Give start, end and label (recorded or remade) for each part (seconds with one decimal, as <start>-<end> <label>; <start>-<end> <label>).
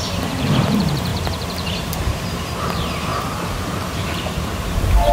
0.0-3.1 remade; 3.1-3.7 recorded; 3.7-5.1 remade